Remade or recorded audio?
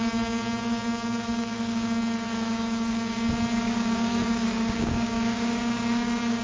remade